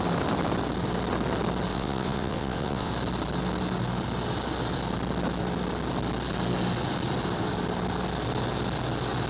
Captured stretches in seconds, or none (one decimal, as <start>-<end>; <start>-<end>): 0.0-1.7; 2.9-9.3

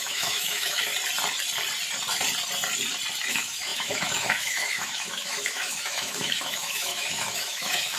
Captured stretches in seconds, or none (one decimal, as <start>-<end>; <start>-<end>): 0.9-3.3

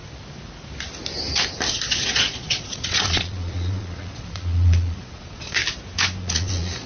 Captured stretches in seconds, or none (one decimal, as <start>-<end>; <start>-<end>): 0.0-1.7; 5.6-6.2

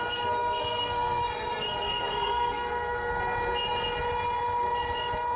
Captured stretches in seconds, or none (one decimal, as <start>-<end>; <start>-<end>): 0.0-0.6; 1.2-1.9; 3.2-5.4

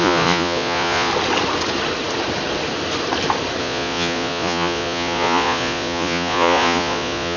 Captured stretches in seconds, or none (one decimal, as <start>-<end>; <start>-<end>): 1.1-3.6